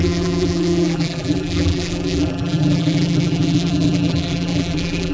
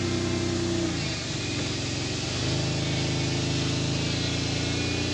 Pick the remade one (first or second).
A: first